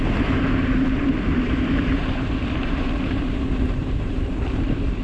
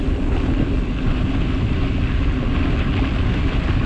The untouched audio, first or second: second